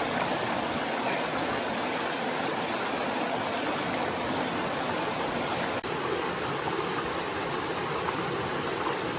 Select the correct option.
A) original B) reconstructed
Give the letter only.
A